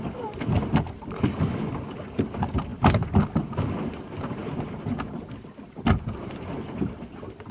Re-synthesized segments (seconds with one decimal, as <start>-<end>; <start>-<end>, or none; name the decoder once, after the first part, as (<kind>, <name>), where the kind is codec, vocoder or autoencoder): none